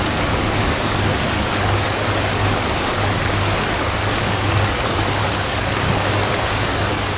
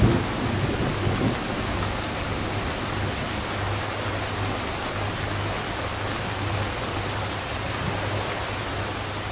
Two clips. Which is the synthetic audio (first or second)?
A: first